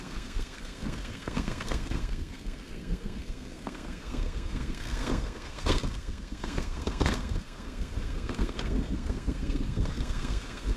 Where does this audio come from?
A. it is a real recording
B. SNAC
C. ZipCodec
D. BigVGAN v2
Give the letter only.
B